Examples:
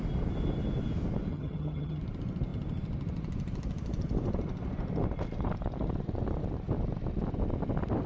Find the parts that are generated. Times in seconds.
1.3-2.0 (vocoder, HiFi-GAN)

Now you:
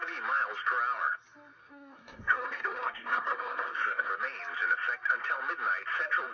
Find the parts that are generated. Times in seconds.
1.6-4.1 (codec, SNAC)

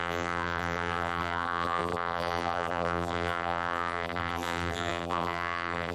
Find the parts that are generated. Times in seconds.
0.0-5.9 (vocoder, BigVGAN v2)

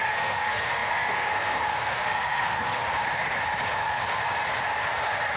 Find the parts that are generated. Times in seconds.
0.0-2.8 (codec, SNAC)